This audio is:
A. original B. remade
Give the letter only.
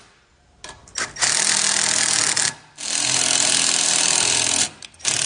A